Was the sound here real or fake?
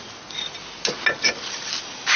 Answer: real